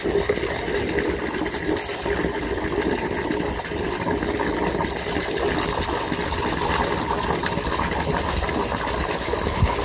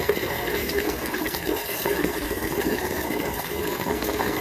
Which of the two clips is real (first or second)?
first